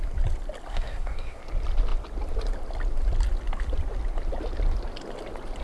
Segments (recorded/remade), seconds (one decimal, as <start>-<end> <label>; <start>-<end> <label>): 0.0-0.7 recorded; 0.7-1.4 remade; 1.4-5.6 recorded